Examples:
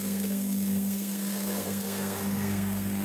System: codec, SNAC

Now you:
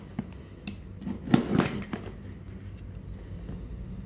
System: none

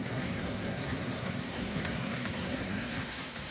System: codec, SNAC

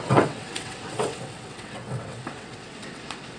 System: vocoder, WaveNeXt